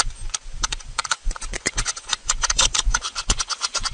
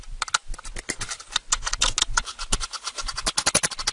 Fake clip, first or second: first